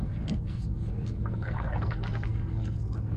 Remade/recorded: remade